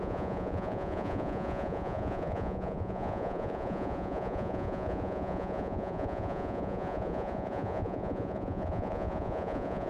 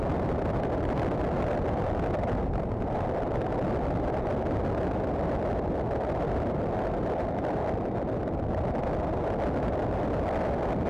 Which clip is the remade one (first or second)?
first